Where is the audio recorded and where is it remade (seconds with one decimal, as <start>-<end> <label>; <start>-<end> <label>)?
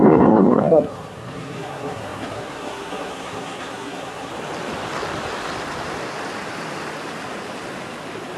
0.0-4.3 remade; 4.3-8.4 recorded